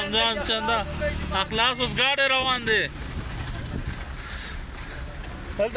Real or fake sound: real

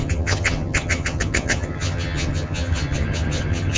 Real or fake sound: fake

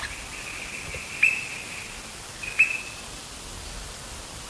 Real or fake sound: real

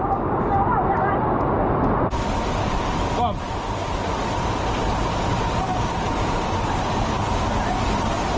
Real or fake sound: real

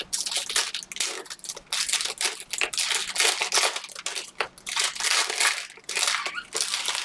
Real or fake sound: real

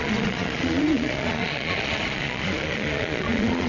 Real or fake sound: fake